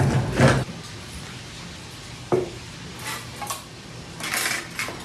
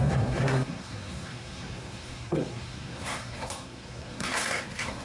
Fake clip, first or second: second